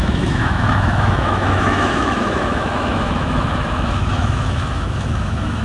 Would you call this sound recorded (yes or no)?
no